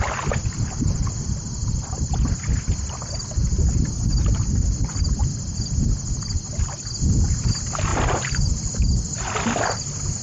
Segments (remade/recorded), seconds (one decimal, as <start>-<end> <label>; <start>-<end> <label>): 0.0-10.2 recorded